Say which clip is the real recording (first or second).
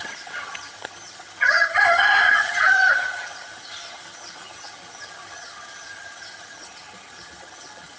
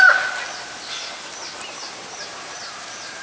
second